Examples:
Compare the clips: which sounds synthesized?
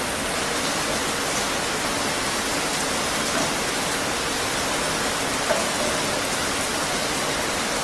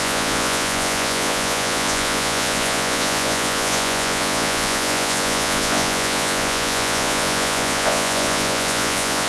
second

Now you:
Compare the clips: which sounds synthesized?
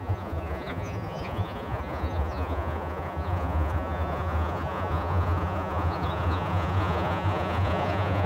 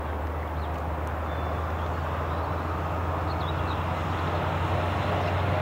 first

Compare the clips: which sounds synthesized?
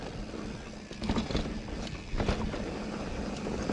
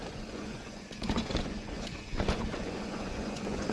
second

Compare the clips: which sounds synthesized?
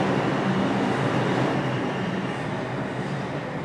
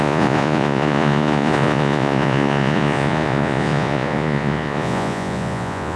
second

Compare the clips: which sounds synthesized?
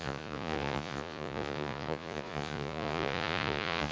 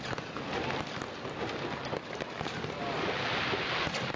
first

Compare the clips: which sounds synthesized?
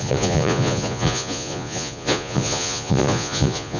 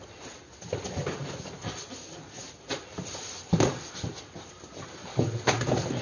first